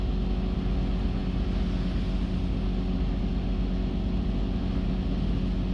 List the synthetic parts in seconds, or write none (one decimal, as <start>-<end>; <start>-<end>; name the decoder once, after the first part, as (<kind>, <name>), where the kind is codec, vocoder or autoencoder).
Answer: none